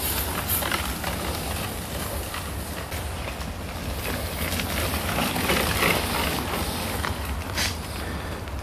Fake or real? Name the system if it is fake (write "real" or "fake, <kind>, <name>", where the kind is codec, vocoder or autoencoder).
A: real